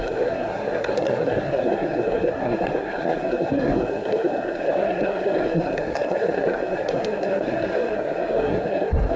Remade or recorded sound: remade